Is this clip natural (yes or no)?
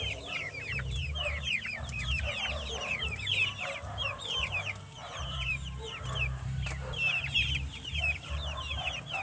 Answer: no